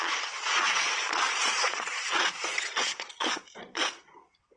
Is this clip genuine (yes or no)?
no